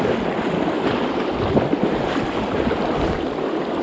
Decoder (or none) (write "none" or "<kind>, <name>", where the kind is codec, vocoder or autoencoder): none